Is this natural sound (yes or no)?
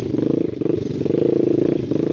no